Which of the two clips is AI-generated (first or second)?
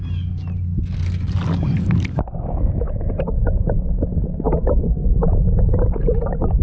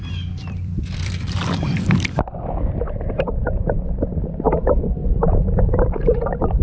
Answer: second